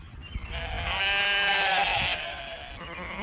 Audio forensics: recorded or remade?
recorded